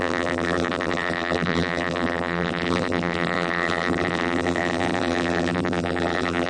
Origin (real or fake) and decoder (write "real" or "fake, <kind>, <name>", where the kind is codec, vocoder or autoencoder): fake, vocoder, BigVGAN v2